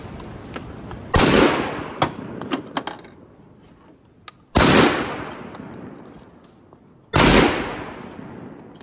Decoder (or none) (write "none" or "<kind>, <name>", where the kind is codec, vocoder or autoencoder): none